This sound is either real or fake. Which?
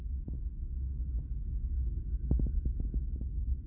real